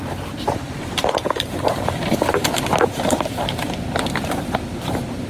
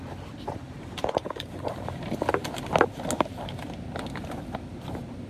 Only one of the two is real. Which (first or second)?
second